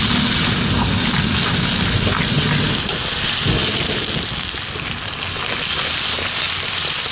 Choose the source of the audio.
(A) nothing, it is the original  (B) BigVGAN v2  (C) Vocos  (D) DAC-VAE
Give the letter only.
A